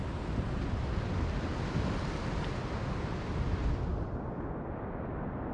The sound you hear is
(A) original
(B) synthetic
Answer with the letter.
A